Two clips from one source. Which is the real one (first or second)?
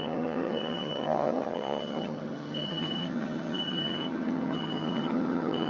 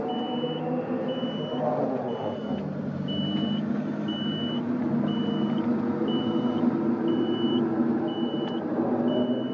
second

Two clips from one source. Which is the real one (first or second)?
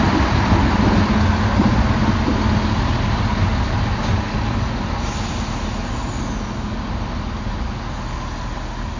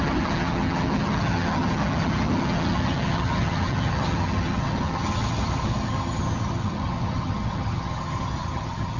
first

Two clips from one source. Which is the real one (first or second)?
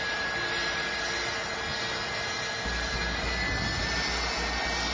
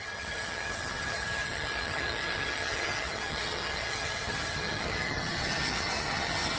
first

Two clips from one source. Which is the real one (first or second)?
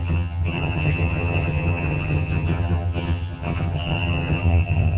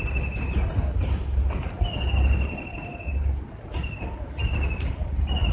second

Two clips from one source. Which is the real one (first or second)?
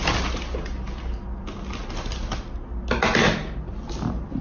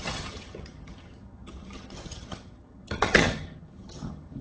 first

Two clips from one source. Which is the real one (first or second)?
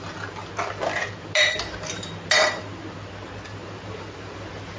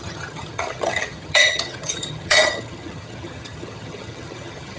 first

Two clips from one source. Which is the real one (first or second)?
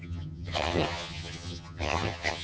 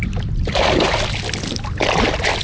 second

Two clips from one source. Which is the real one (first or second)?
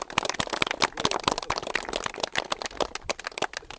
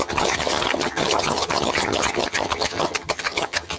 first